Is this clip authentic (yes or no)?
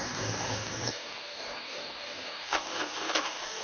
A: no